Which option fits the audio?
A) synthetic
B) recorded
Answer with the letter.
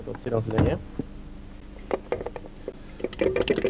B